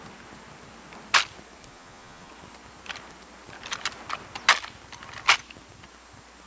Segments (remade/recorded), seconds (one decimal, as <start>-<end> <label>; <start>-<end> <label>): 0.0-1.7 recorded; 1.7-2.3 remade; 2.3-6.5 recorded